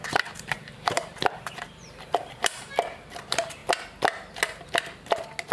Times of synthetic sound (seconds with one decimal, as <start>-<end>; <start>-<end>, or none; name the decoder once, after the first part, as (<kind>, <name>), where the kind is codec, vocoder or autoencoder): 0.0-2.7 (vocoder, BigVGAN v2)